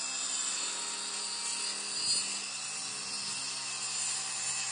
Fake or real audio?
real